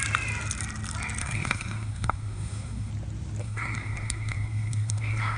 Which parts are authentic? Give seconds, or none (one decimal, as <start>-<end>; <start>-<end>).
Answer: 0.0-1.2; 2.9-3.4